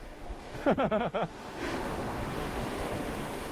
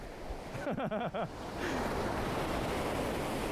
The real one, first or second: second